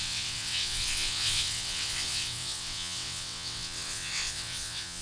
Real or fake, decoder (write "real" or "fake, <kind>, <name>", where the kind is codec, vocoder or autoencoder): fake, vocoder, WaveNeXt